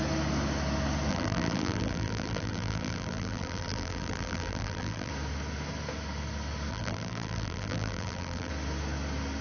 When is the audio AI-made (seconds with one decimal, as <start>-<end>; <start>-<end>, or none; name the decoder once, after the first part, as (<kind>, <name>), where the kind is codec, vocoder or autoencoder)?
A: 1.1-5.1 (vocoder, BigVGAN v2); 6.7-8.5

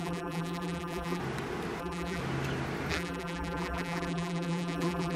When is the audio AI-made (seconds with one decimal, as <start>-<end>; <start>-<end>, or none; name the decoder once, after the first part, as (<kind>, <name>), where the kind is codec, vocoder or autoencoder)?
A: 0.0-1.2 (vocoder, BigVGAN v2); 1.8-2.2; 2.9-5.2

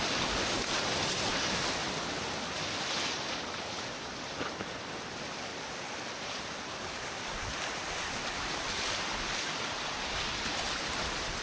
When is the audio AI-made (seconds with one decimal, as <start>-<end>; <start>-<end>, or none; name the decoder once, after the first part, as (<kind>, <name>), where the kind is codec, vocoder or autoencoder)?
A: 0.0-1.8 (vocoder, BigVGAN v2); 4.4-11.4

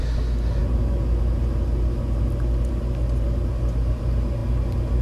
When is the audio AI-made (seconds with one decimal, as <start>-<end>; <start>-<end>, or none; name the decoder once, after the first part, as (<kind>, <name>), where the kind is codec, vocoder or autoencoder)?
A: none

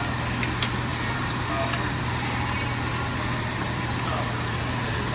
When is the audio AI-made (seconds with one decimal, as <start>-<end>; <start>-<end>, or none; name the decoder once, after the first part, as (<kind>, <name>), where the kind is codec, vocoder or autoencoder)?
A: 0.9-1.5 (vocoder, BigVGAN v2); 3.1-4.6

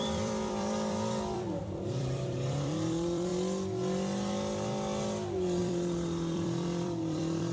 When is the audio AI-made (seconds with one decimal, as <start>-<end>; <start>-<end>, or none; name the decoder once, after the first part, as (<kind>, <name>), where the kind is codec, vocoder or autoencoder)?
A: 0.0-3.3 (vocoder, BigVGAN v2); 5.6-7.5

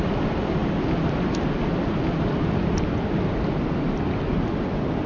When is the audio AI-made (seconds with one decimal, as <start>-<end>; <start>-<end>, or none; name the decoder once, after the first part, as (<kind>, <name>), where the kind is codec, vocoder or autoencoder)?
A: none

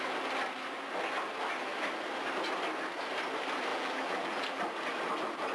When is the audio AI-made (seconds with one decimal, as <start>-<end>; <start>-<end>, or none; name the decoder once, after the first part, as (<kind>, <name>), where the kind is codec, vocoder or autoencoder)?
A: 3.7-4.6 (vocoder, BigVGAN v2)